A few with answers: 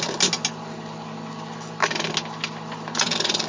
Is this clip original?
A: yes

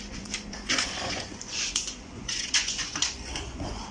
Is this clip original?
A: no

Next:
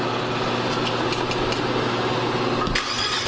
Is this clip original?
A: yes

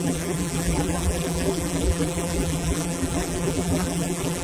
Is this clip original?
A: no